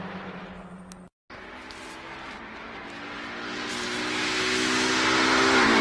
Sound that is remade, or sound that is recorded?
recorded